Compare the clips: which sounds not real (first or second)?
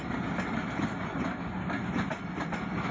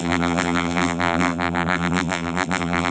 second